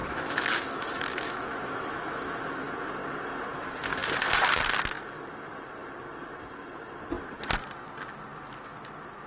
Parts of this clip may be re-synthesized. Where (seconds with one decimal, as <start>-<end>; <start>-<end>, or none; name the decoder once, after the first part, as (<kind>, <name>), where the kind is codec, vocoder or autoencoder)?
0.0-2.7 (autoencoder, DAC-VAE)